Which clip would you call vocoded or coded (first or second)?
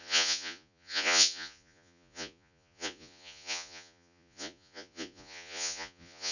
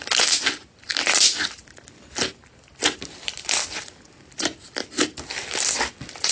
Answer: first